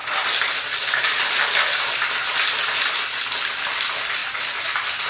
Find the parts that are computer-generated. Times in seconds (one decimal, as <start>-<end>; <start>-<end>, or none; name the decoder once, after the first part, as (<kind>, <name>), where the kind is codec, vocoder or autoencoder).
4.2-5.1 (vocoder, BigVGAN v2)